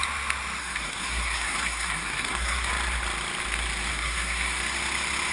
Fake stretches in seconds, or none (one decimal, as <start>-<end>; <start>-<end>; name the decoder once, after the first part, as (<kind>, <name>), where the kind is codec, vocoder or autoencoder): 0.6-2.7 (codec, SNAC); 3.9-4.6